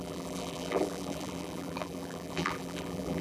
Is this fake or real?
fake